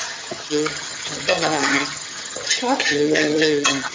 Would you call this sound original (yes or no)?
no